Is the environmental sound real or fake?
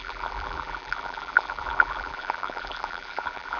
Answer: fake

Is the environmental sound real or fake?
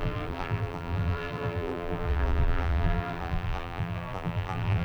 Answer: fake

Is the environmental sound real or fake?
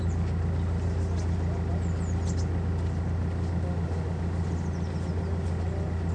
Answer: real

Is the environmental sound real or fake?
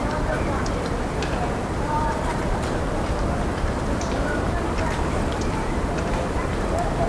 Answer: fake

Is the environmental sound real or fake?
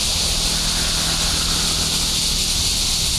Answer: real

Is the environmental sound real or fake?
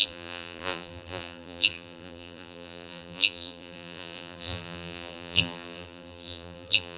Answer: fake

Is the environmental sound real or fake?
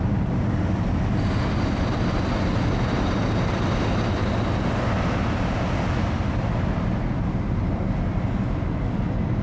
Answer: real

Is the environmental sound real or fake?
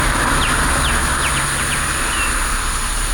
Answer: fake